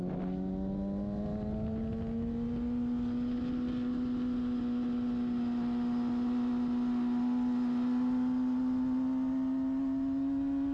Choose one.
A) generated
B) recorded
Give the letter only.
B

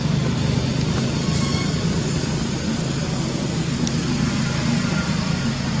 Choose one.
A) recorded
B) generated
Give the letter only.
A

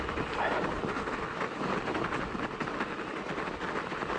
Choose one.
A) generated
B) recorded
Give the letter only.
B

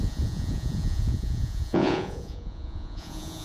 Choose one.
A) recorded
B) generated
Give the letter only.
B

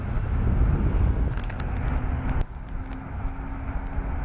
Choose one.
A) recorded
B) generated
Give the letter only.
A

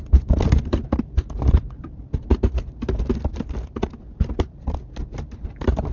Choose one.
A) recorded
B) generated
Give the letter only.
A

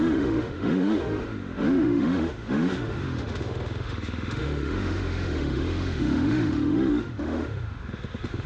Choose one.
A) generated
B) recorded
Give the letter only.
A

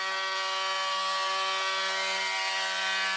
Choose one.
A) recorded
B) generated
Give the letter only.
A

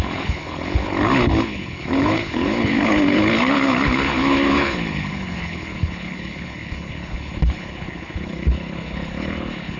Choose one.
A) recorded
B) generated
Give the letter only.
B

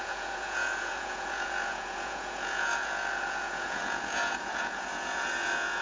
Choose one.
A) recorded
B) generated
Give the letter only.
B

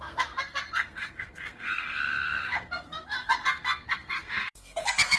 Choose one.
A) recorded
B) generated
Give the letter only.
B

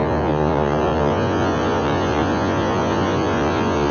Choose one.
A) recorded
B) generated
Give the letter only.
B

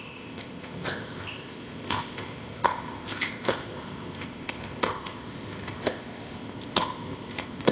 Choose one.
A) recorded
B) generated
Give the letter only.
B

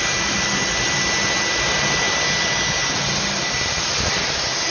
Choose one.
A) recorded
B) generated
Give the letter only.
A